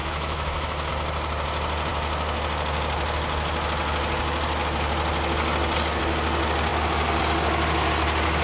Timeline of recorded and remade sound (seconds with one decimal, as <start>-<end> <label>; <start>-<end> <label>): 0.0-0.9 remade; 0.9-8.4 recorded